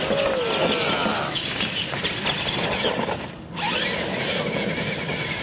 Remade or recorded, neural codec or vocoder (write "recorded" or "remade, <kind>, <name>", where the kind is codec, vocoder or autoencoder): recorded